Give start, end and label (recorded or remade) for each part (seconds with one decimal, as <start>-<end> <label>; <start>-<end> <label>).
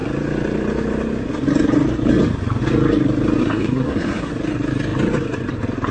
0.0-3.4 recorded; 3.4-4.3 remade; 4.3-5.9 recorded